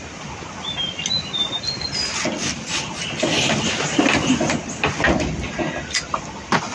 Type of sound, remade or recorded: recorded